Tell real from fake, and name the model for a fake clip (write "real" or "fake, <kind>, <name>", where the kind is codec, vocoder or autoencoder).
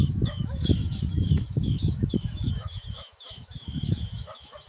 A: fake, autoencoder, DAC-VAE